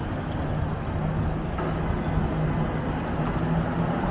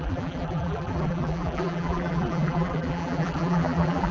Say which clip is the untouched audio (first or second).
first